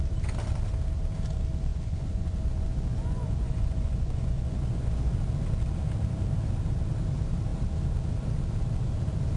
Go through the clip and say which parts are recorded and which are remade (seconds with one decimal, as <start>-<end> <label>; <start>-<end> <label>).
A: 0.0-1.7 recorded; 1.7-5.1 remade; 5.1-9.4 recorded